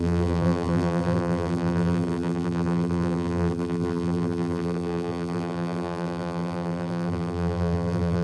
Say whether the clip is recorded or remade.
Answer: remade